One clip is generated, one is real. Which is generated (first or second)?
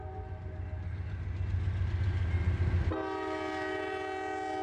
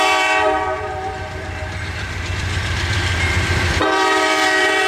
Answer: second